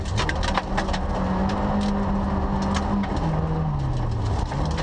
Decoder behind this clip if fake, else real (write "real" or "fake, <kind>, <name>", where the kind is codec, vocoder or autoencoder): real